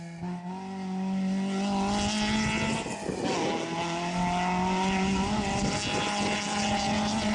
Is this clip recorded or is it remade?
recorded